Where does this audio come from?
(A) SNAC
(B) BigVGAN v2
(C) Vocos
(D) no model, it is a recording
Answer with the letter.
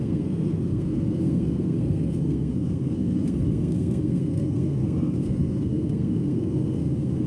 A